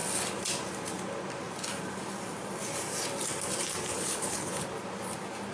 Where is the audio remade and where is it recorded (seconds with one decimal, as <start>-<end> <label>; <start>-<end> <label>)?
0.0-3.9 recorded; 3.9-4.7 remade; 4.7-5.5 recorded

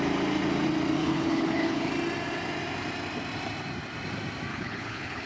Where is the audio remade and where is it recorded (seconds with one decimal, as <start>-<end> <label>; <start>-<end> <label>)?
0.0-1.0 recorded; 1.0-1.9 remade; 1.9-4.5 recorded; 4.5-5.3 remade

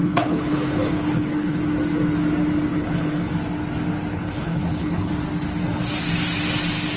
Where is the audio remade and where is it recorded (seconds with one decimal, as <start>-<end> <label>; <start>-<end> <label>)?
0.0-1.6 remade; 1.6-2.7 recorded; 2.7-3.3 remade; 3.3-4.1 recorded; 4.1-5.1 remade; 5.1-7.0 recorded

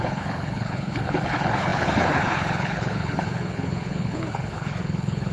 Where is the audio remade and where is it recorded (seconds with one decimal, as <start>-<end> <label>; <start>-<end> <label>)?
0.0-5.3 remade

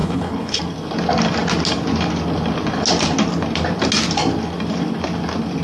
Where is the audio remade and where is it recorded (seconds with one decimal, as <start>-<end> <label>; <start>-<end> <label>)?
0.0-0.6 remade; 0.6-5.6 recorded

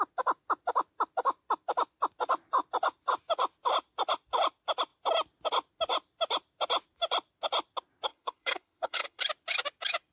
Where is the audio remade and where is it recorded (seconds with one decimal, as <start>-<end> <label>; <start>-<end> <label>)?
0.0-8.1 recorded; 8.1-9.2 remade; 9.2-10.1 recorded